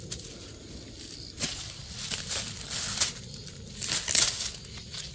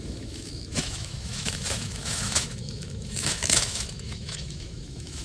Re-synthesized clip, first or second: second